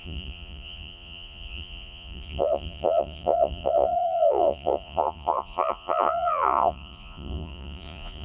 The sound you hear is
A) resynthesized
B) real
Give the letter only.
A